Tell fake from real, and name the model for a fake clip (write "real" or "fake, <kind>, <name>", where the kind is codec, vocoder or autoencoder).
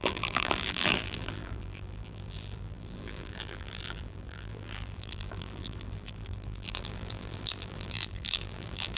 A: fake, vocoder, BigVGAN v2